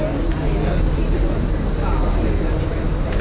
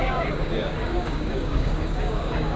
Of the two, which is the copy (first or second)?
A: second